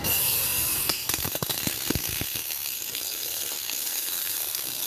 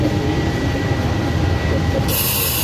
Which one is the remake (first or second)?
first